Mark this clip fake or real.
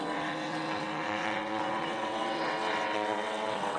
fake